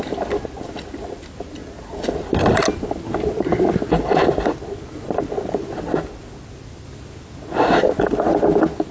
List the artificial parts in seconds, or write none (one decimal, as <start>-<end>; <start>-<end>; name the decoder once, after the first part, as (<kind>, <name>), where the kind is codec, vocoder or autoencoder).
none